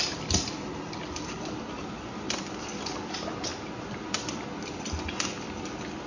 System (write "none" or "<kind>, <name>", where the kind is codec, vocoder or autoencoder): none